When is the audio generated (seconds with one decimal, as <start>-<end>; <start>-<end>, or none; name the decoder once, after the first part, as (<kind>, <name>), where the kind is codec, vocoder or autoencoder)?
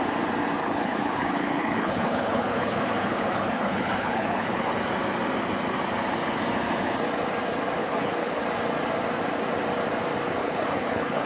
0.6-4.7 (codec, HILCodec); 7.8-8.4; 10.4-11.3